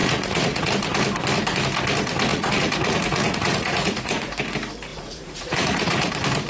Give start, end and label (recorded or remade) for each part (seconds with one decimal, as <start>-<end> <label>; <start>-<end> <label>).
0.0-0.7 remade; 0.7-2.3 recorded; 2.3-4.3 remade; 4.3-4.9 recorded; 4.9-6.1 remade; 6.1-6.5 recorded